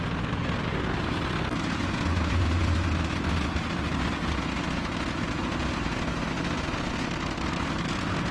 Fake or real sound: real